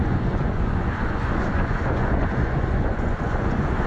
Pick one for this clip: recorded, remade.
remade